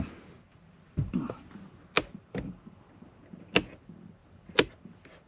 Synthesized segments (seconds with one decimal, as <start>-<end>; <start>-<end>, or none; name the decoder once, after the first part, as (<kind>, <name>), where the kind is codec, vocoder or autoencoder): none